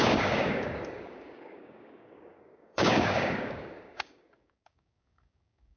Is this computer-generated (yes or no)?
yes